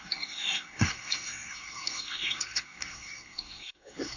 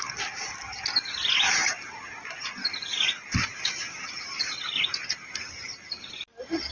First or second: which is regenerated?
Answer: first